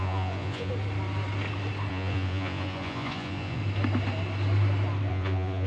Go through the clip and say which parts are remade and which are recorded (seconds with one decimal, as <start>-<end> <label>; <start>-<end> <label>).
0.0-0.7 remade; 0.7-1.9 recorded; 1.9-3.6 remade; 3.6-5.1 recorded; 5.1-5.7 remade